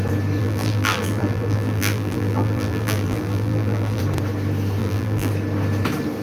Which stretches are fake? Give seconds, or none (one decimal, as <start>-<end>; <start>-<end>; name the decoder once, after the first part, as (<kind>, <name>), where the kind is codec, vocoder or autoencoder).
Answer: 0.4-4.0 (vocoder, BigVGAN v2); 4.8-5.3